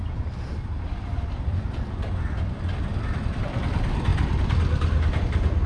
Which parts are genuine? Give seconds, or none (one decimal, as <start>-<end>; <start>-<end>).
0.0-5.7